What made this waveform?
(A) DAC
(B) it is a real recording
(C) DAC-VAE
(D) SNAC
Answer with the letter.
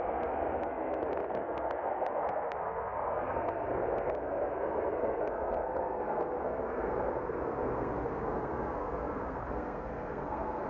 D